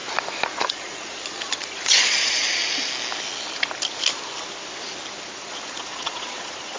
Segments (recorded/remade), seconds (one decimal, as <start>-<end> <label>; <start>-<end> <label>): 0.0-0.7 recorded; 0.7-2.6 remade; 2.6-5.3 recorded; 5.3-6.8 remade